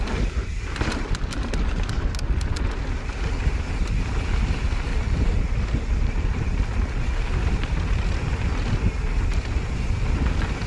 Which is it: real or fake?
real